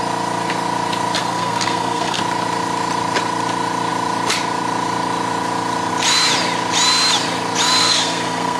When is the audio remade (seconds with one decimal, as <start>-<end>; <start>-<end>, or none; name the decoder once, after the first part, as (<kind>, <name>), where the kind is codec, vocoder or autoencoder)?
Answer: 1.2-2.2 (codec, SNAC); 7.8-8.6